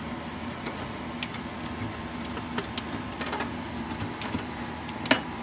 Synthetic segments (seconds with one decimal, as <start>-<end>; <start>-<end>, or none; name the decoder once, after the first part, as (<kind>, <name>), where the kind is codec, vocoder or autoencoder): 0.4-1.0 (vocoder, Vocos)